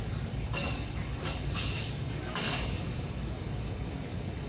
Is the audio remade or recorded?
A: remade